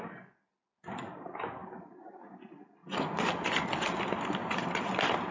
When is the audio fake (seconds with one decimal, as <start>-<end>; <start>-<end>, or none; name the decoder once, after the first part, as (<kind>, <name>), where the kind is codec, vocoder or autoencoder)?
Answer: none